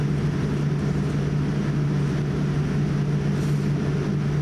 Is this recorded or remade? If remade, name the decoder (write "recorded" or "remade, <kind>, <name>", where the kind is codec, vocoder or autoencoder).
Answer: recorded